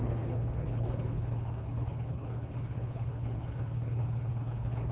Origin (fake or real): fake